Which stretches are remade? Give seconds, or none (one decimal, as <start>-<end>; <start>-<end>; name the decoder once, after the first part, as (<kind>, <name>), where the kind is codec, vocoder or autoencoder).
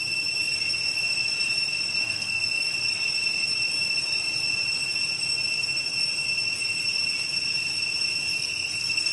2.0-2.7 (codec, SNAC); 8.3-9.1